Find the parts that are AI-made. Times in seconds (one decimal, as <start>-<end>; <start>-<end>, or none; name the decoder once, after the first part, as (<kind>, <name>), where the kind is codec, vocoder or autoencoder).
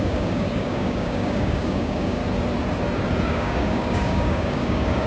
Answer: 0.0-2.2 (codec, DAC); 3.3-5.1